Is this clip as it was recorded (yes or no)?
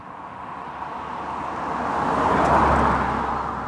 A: yes